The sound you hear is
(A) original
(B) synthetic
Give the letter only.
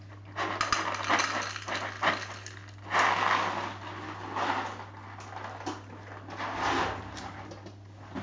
A